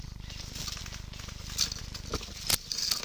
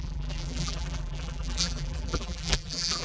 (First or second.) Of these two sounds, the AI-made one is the second